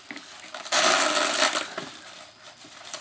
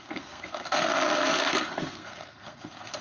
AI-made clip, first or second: second